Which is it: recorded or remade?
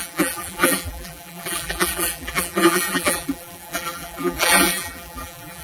remade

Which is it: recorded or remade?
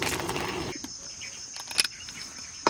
recorded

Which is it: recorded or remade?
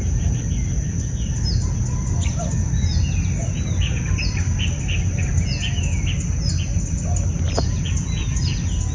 recorded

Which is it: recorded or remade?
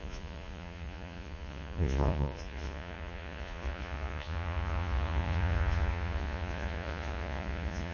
remade